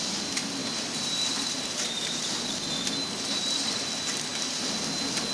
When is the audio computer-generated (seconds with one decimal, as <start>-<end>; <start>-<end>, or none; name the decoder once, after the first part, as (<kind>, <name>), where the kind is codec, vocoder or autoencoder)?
0.6-2.4 (vocoder, BigVGAN v2)